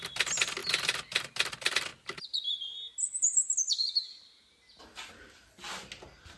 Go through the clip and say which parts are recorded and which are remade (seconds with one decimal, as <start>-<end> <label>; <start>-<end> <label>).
0.0-6.4 recorded